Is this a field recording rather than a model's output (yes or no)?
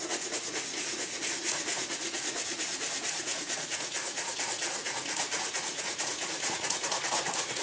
no